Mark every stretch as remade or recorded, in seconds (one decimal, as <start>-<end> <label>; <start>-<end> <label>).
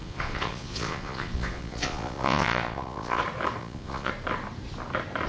0.0-3.2 remade; 3.2-3.6 recorded; 3.6-4.1 remade; 4.1-5.3 recorded